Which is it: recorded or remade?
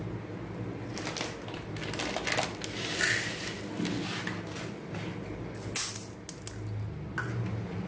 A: recorded